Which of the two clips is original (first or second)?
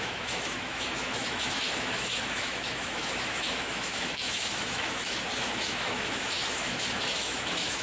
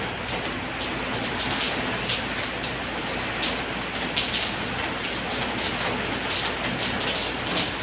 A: second